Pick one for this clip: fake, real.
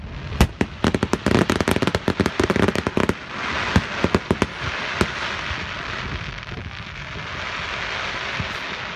real